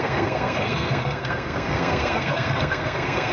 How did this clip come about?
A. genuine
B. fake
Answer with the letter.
B